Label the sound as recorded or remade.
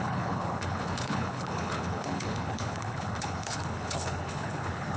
remade